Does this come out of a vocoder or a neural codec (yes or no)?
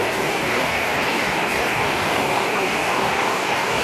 yes